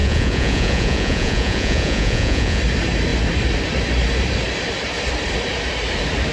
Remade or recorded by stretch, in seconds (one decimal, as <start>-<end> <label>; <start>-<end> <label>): 0.0-2.6 remade; 2.6-6.3 recorded